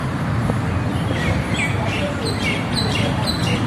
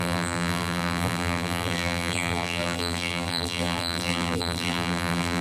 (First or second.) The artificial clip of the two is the second